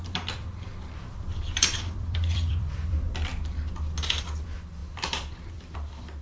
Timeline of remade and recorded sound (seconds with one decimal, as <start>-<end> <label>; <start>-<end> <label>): 0.0-3.3 remade; 3.3-4.1 recorded; 4.1-6.2 remade